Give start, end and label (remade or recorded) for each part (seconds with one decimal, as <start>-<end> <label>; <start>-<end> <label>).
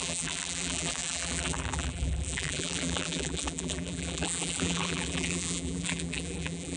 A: 0.0-6.8 remade